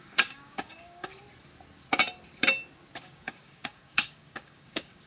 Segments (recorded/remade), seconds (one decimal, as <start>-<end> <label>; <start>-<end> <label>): 0.0-1.1 remade; 1.1-3.0 recorded; 3.0-5.1 remade